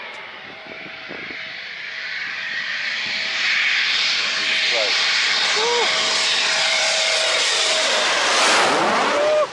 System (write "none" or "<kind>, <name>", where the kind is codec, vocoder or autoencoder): vocoder, BigVGAN v2